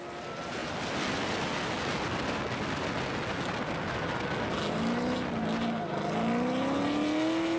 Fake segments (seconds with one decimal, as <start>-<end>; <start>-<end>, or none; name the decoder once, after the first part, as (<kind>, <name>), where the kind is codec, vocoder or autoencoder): none